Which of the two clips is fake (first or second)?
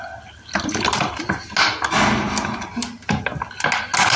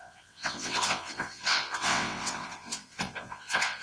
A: second